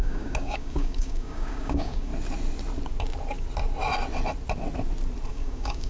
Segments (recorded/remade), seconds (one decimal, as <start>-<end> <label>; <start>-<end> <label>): 0.0-2.1 remade; 2.1-5.3 recorded; 5.3-5.9 remade